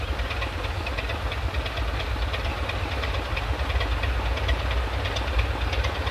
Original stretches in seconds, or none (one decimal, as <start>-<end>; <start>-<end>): 0.0-2.5; 3.7-6.1